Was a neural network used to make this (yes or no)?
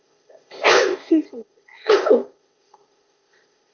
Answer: yes